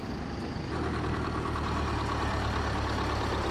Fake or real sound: real